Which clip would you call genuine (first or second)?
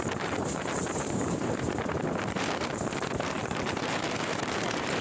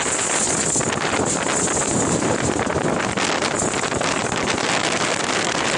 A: second